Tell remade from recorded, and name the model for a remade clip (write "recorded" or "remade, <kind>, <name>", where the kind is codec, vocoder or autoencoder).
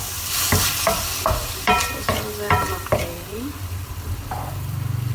remade, vocoder, BigVGAN v2